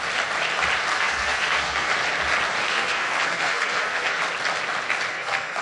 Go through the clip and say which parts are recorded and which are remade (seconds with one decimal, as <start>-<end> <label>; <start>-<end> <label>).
0.0-0.9 recorded; 0.9-1.9 remade; 1.9-2.6 recorded; 2.6-4.2 remade; 4.2-5.1 recorded; 5.1-5.6 remade

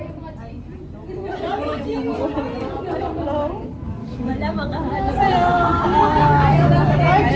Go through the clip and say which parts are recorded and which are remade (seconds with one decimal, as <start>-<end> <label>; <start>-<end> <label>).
0.0-4.0 recorded; 4.0-5.1 remade; 5.1-7.4 recorded

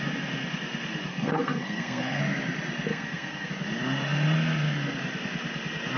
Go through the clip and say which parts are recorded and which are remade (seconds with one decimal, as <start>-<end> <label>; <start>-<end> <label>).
0.0-1.1 recorded; 1.1-2.2 remade; 2.2-2.9 recorded; 2.9-3.5 remade; 3.5-6.0 recorded

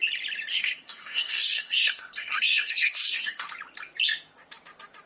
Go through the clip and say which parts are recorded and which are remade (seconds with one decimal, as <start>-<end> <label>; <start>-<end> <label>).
0.0-0.5 recorded; 0.5-3.5 remade; 3.5-5.1 recorded